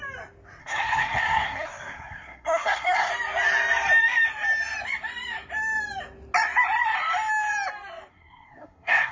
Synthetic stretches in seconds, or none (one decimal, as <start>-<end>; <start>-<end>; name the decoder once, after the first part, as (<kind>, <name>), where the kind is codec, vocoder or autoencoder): 0.6-3.1 (codec, SNAC); 8.1-9.1